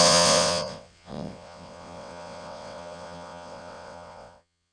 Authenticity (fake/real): fake